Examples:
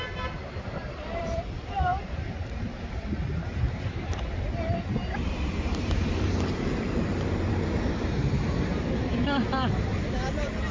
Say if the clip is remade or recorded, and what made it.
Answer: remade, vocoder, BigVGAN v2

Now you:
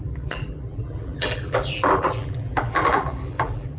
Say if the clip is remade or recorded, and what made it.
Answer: remade, vocoder, BigVGAN v2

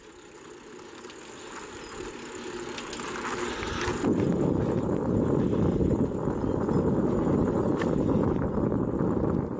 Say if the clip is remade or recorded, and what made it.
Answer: recorded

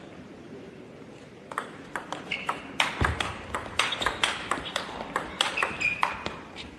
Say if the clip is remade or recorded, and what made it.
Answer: remade, vocoder, BigVGAN v2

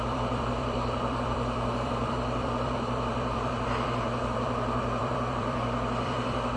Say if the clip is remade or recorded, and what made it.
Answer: remade, vocoder, BigVGAN v2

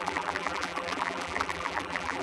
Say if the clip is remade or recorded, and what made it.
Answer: remade, vocoder, BigVGAN v2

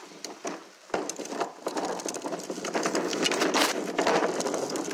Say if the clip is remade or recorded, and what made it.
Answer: recorded